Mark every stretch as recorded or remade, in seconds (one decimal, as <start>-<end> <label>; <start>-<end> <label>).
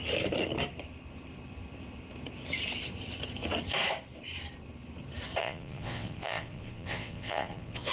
0.0-5.4 recorded; 5.4-7.9 remade